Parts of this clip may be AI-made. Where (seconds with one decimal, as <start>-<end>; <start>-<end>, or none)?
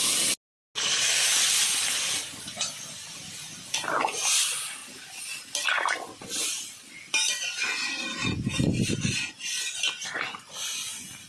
none